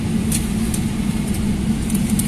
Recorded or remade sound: recorded